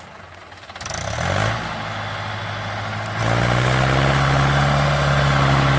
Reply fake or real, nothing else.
real